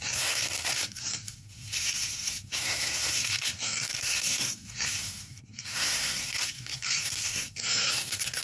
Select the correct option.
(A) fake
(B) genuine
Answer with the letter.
A